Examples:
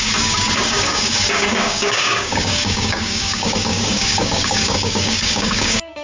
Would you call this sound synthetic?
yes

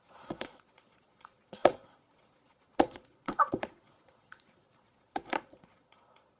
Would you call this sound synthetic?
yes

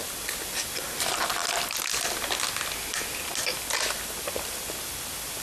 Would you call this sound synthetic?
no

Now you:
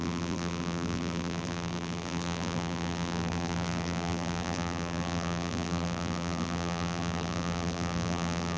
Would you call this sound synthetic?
yes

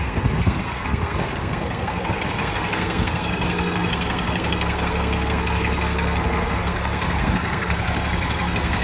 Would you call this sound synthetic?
yes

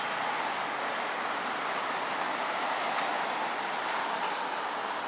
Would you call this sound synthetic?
no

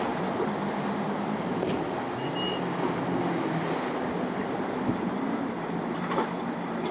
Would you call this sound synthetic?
no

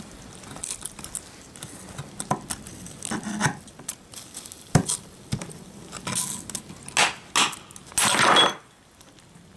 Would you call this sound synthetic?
no